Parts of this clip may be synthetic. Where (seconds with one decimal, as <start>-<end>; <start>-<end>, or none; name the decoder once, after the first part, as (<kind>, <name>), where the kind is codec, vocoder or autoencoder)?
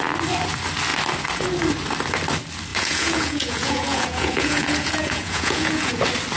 2.7-6.0 (vocoder, Vocos)